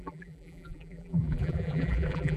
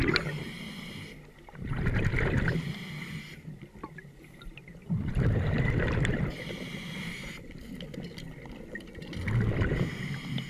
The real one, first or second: second